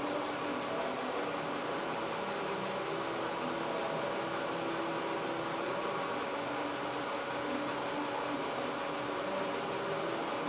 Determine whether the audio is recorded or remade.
recorded